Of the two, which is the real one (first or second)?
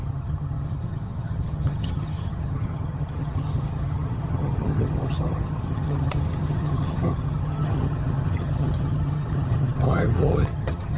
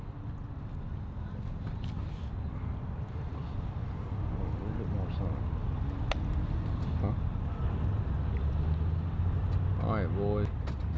second